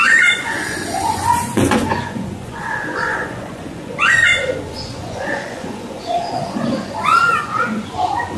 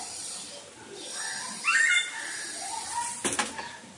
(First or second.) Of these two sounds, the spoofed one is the first